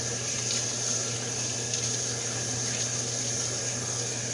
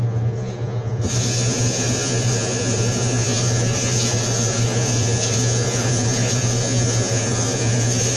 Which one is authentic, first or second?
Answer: first